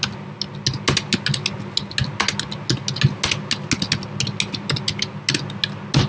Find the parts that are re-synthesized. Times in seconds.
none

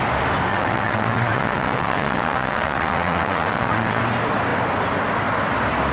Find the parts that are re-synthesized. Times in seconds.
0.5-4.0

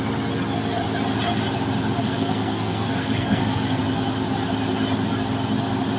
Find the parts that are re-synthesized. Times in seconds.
2.0-3.8

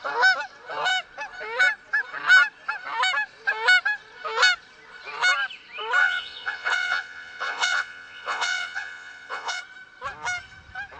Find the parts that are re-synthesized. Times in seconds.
6.0-9.6